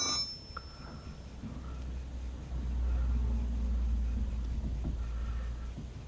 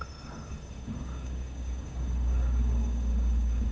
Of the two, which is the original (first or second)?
first